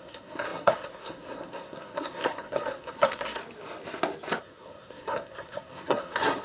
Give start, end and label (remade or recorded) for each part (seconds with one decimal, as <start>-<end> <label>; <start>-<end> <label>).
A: 0.0-3.4 remade; 3.4-4.4 recorded; 4.4-6.4 remade